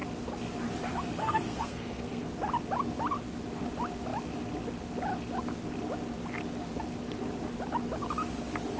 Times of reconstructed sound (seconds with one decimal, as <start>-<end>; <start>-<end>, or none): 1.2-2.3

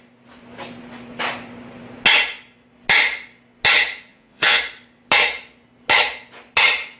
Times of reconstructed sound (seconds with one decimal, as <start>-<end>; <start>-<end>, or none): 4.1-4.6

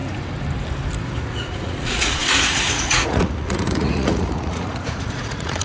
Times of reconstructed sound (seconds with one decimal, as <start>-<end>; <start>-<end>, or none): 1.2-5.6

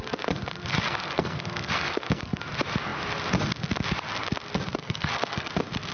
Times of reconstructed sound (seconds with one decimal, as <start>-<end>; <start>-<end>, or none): 0.7-2.4; 4.8-5.5